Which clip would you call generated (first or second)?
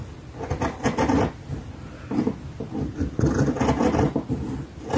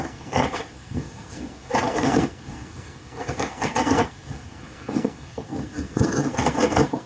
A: second